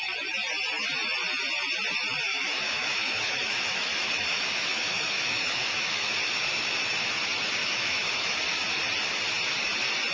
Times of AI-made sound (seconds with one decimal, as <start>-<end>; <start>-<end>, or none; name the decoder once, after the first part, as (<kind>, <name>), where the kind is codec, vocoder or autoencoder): 2.3-6.1 (autoencoder, DAC-VAE); 7.6-8.4